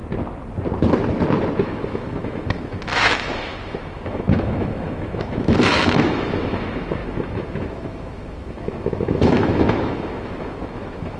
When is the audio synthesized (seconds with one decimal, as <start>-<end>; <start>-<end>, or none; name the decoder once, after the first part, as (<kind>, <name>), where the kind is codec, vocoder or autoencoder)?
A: 1.6-11.2 (autoencoder, DAC-VAE)